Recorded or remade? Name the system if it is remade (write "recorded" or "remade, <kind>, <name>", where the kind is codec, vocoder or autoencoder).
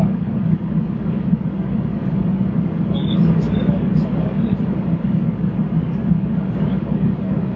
remade, codec, DAC